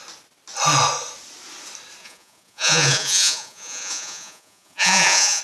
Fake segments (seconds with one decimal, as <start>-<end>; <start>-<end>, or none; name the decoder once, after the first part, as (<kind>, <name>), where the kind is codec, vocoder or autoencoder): 2.0-5.4 (vocoder, Vocos)